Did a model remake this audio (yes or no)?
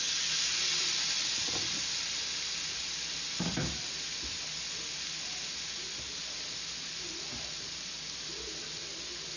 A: no